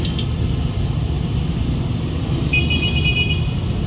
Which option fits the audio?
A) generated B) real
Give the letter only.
B